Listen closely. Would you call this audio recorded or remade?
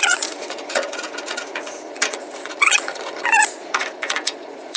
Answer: remade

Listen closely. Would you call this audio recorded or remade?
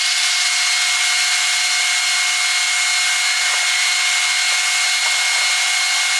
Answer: recorded